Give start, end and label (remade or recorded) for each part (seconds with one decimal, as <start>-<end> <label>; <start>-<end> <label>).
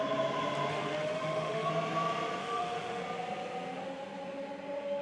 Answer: 0.0-0.7 recorded; 0.7-1.7 remade; 1.7-2.4 recorded; 2.4-3.0 remade; 3.0-5.0 recorded